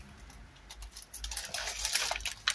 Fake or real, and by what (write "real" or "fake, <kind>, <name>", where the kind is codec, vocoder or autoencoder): real